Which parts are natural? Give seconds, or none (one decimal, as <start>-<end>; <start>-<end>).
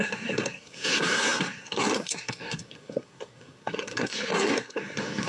none